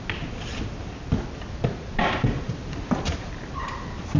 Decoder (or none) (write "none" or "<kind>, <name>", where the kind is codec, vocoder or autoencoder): none